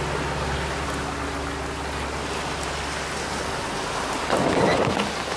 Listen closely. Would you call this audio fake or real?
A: real